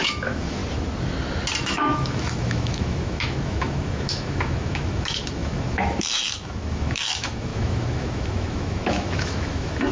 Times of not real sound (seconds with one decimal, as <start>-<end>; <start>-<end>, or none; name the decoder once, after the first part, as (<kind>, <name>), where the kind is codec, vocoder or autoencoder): 0.0-0.6 (autoencoder, DAC-VAE); 1.6-9.9